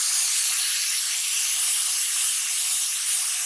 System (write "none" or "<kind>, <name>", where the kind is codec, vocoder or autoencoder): vocoder, BigVGAN v2